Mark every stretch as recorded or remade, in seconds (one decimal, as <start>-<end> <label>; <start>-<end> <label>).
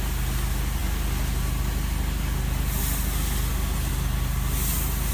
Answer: 0.0-5.1 recorded